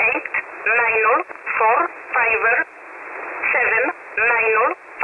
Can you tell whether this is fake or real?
real